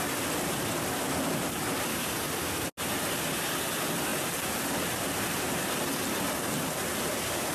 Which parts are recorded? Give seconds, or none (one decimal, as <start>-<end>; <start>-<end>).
0.0-4.1; 5.7-7.5